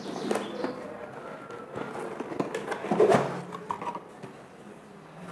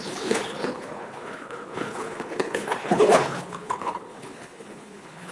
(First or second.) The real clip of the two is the first